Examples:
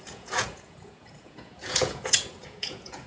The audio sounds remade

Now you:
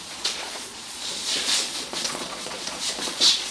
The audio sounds remade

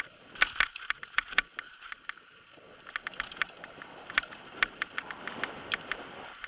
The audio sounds recorded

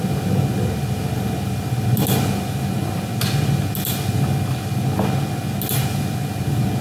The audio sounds recorded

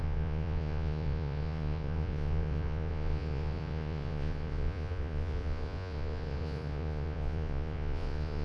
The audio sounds remade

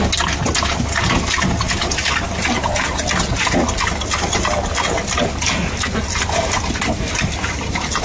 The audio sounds recorded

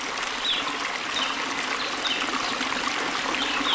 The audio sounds recorded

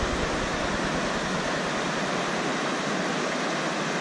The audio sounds recorded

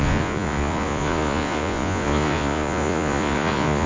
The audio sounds remade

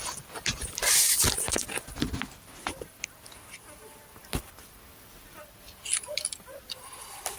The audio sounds recorded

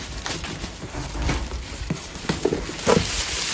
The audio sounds recorded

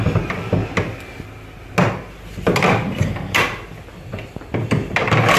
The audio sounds recorded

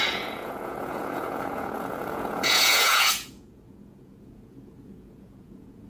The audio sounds remade